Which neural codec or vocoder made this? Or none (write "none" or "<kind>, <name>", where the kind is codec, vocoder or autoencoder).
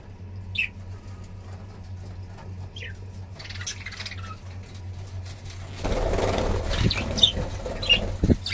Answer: none